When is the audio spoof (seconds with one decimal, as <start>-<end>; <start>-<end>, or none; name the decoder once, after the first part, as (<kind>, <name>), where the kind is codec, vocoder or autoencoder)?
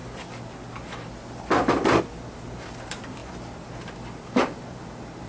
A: 2.0-5.3 (vocoder, BigVGAN v2)